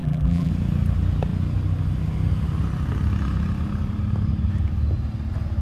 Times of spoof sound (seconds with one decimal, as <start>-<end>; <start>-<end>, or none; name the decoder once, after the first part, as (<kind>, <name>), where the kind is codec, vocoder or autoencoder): 0.0-0.5 (vocoder, BigVGAN v2)

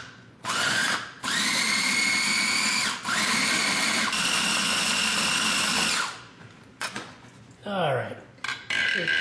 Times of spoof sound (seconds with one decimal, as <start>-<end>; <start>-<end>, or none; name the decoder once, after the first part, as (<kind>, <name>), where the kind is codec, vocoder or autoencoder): 0.0-0.8 (vocoder, Vocos); 4.6-5.0; 6.8-7.6

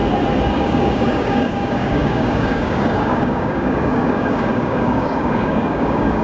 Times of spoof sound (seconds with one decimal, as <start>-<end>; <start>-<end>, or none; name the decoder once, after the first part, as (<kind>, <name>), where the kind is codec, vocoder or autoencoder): 0.5-6.2 (codec, DAC)

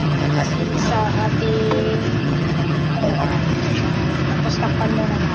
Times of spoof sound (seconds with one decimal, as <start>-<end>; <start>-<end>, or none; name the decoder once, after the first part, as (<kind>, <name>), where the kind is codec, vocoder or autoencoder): 0.0-0.9 (vocoder, HiFi-GAN); 2.2-3.3